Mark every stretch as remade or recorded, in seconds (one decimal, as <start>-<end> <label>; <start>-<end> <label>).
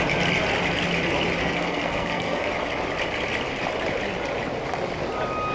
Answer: 0.0-1.4 recorded; 1.4-2.5 remade; 2.5-5.5 recorded